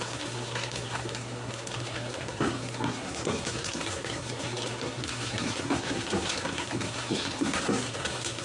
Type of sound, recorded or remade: remade